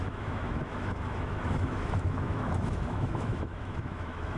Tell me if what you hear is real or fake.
fake